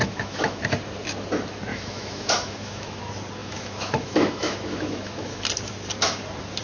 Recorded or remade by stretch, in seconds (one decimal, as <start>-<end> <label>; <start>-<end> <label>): 0.0-0.6 remade; 0.6-1.7 recorded; 1.7-3.0 remade; 3.0-3.4 recorded; 3.4-5.4 remade; 5.4-6.6 recorded